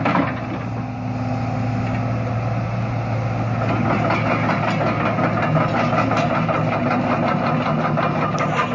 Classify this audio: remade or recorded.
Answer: recorded